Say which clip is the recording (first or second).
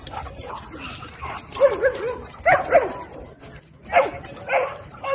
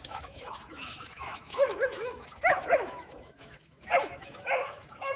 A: first